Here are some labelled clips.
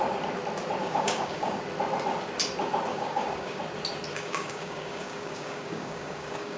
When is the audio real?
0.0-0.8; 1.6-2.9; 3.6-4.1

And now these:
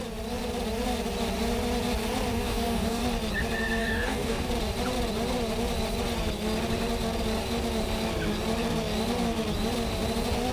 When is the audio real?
0.0-2.3; 3.0-3.8; 4.5-10.5

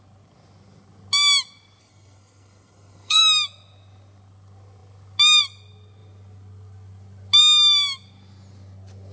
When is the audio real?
0.0-1.8; 3.2-9.1